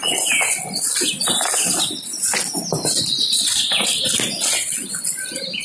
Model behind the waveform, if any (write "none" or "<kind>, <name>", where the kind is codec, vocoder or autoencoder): none